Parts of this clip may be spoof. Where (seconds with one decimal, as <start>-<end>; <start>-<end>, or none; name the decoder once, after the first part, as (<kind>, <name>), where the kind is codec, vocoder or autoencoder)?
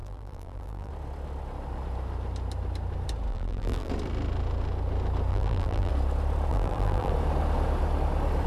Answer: 0.0-0.9 (vocoder, BigVGAN v2); 3.3-3.9; 5.3-5.9; 6.5-7.1